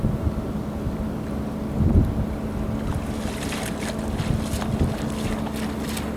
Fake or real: real